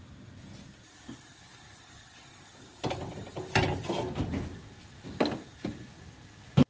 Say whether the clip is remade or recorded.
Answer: recorded